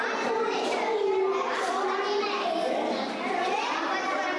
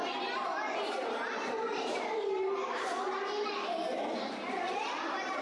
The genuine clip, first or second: first